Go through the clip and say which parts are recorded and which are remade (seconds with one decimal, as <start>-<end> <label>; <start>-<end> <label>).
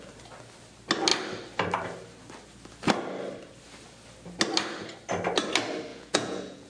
0.0-5.9 recorded; 5.9-6.7 remade